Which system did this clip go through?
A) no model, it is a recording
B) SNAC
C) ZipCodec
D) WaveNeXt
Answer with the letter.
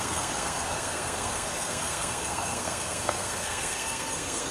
B